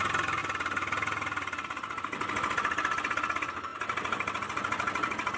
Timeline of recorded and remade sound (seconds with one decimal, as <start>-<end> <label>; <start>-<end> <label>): 0.0-5.4 recorded